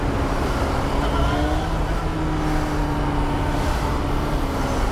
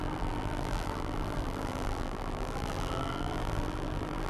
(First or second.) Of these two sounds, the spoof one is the second